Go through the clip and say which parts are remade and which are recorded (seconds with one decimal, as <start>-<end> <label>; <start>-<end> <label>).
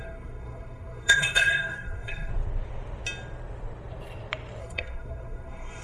0.0-2.3 remade; 2.3-4.6 recorded; 4.6-5.8 remade